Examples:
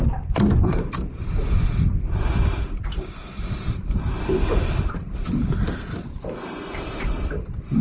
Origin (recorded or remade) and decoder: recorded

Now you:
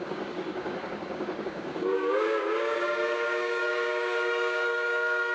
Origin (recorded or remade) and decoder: remade, codec, DAC